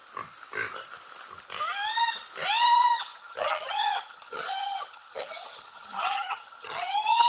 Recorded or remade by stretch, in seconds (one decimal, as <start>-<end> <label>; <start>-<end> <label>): 0.0-2.6 recorded; 2.6-7.3 remade